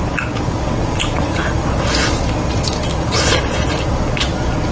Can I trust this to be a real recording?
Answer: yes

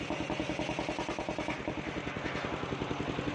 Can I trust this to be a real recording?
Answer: yes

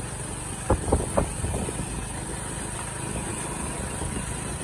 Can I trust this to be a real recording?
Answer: yes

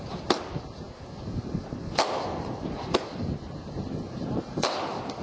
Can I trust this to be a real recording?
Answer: yes